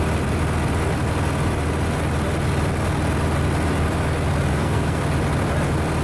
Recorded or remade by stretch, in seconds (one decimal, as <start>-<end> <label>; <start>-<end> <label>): 0.0-4.5 recorded; 4.5-5.0 remade; 5.0-6.0 recorded